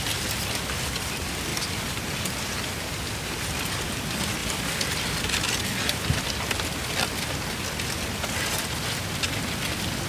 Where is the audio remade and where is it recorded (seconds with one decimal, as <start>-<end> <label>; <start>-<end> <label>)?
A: 0.0-10.1 recorded